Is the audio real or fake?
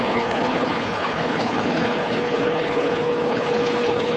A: fake